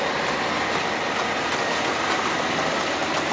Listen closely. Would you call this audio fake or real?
real